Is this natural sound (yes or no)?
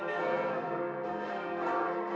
no